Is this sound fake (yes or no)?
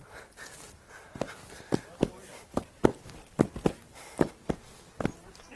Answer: no